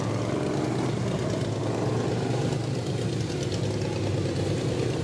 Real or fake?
real